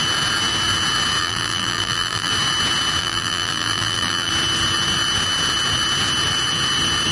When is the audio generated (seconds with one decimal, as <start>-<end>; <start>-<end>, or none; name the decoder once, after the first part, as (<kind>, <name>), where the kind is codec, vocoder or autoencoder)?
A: 1.2-2.3 (vocoder, BigVGAN v2); 3.0-4.3